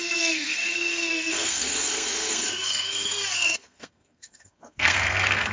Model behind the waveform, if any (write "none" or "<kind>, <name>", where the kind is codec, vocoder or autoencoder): codec, SNAC